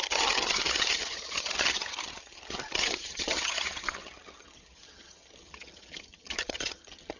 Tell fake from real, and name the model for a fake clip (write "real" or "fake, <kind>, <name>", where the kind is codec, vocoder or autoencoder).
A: fake, vocoder, HiFi-GAN